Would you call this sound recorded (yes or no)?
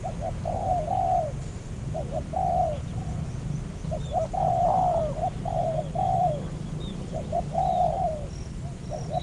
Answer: no